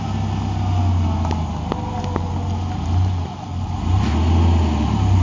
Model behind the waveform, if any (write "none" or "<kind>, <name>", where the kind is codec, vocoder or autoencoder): none